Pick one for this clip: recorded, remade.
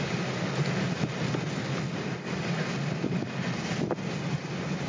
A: recorded